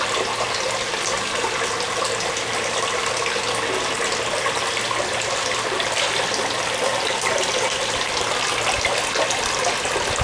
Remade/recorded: recorded